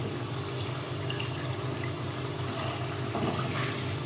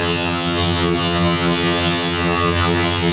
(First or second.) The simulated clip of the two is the second